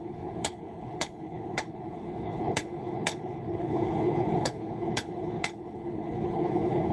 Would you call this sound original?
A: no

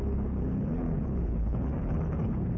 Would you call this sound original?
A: no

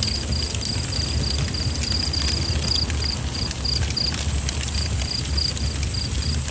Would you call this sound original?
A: yes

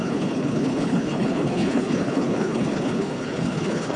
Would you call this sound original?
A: no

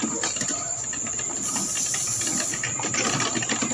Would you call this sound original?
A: yes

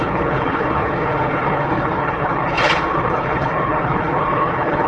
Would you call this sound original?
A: no